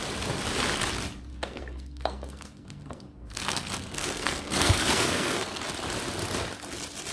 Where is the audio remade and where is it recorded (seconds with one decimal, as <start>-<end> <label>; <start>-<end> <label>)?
0.0-1.3 recorded; 1.3-5.6 remade; 5.6-7.1 recorded